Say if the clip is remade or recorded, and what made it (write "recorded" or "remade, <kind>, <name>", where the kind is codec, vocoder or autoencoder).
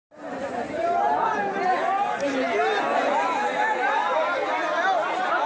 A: recorded